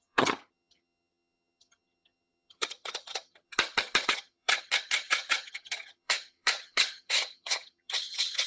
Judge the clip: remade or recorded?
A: remade